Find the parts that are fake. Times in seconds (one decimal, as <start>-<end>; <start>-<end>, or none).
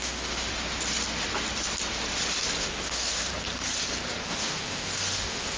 0.0-0.5; 2.6-3.3; 4.3-5.6